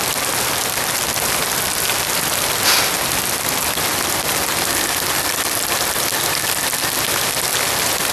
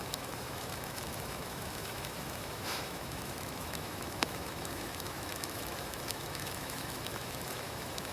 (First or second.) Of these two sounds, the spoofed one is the second